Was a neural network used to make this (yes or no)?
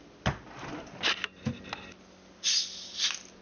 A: no